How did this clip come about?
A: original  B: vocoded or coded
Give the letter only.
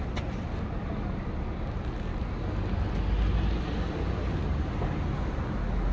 A